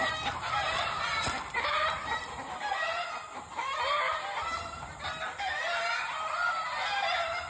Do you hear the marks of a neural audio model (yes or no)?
yes